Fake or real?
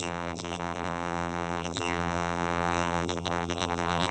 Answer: fake